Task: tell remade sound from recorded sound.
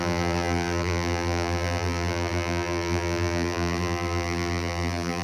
remade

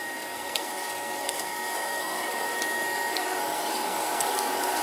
remade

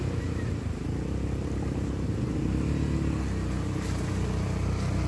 recorded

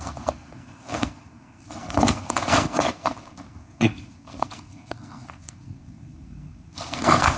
remade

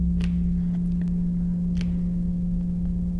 recorded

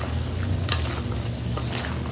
recorded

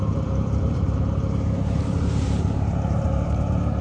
remade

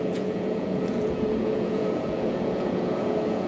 remade